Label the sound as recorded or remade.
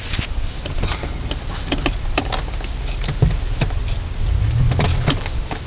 remade